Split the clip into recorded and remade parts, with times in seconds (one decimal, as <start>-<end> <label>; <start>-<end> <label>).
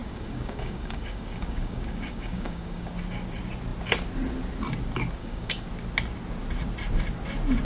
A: 0.0-2.9 remade; 2.9-5.2 recorded; 5.2-5.7 remade; 5.7-7.6 recorded